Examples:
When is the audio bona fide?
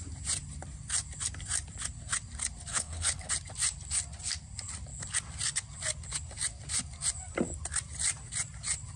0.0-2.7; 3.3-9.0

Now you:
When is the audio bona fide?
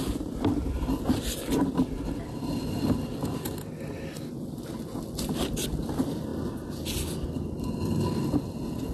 0.0-8.9